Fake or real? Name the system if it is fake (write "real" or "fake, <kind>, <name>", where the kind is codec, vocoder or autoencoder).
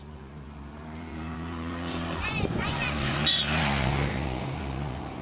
fake, vocoder, Vocos